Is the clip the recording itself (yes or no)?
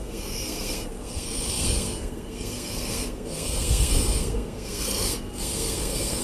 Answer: no